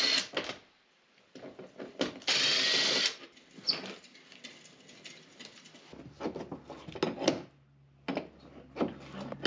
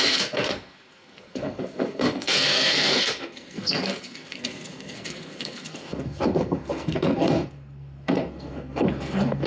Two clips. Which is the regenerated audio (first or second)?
second